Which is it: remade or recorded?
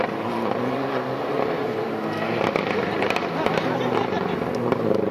recorded